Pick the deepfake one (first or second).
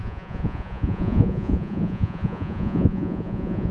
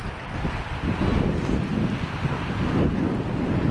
first